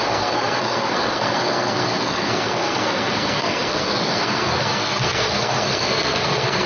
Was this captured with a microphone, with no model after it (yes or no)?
no